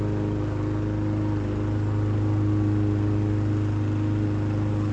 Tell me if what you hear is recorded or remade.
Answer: recorded